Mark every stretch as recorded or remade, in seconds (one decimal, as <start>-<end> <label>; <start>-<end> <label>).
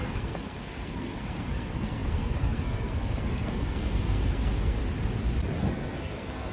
0.0-4.8 remade; 4.8-5.6 recorded; 5.6-6.5 remade